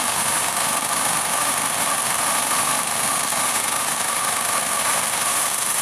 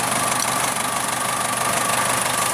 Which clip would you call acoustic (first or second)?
second